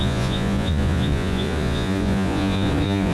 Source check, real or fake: fake